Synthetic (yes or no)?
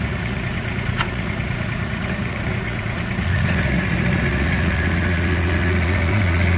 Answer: yes